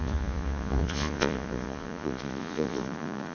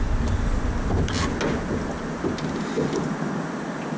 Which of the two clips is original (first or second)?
second